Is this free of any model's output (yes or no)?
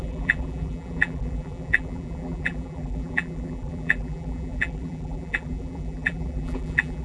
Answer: no